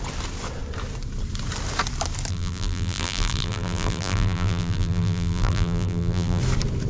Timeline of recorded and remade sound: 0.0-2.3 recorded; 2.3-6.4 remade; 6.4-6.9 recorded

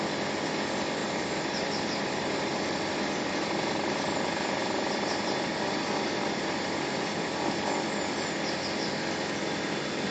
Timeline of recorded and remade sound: 0.0-1.0 recorded; 1.0-3.8 remade; 3.8-4.6 recorded; 4.6-7.6 remade; 7.6-10.1 recorded